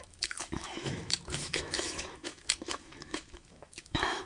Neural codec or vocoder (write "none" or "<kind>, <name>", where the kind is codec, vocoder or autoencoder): autoencoder, DAC-VAE